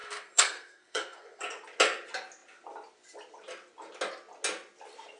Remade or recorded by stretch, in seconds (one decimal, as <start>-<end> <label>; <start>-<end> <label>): 0.0-1.4 remade; 1.4-5.2 recorded